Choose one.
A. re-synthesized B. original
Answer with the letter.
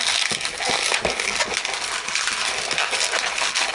B